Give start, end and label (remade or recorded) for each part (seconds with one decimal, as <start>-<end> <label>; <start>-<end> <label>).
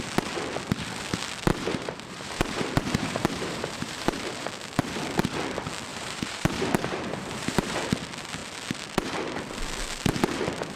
0.0-1.5 recorded; 1.5-4.5 remade; 4.5-5.9 recorded; 5.9-7.9 remade; 7.9-10.8 recorded